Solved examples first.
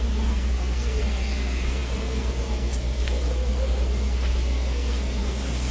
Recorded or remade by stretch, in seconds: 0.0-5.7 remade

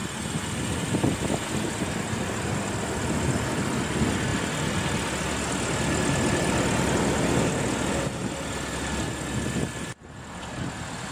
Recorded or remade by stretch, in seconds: 0.0-11.1 recorded